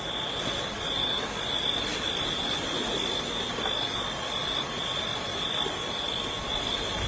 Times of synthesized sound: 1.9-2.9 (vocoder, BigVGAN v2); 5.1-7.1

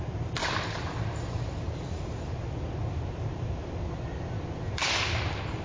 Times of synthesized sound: 0.4-3.8 (vocoder, BigVGAN v2)

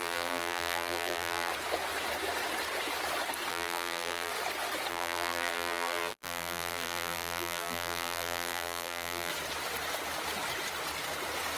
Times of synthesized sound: 0.0-1.5 (vocoder, BigVGAN v2); 3.5-4.3; 4.9-9.3

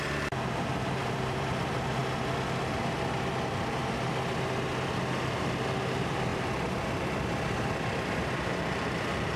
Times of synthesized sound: 0.0-2.0 (vocoder, BigVGAN v2); 5.8-9.4

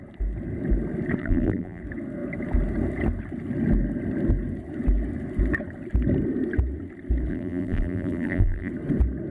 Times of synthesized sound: 1.2-1.8 (vocoder, BigVGAN v2); 7.3-8.7

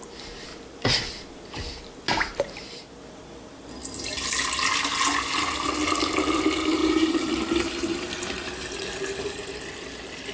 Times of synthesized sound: 6.8-8.1 (vocoder, BigVGAN v2)

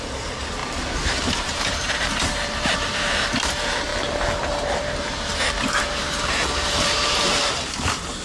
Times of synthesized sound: 0.0-3.9 (vocoder, BigVGAN v2); 4.4-8.2

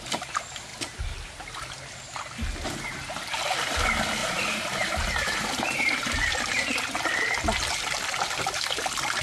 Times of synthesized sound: 4.2-6.3 (vocoder, BigVGAN v2)